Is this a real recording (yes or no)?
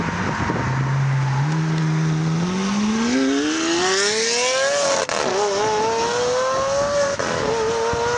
yes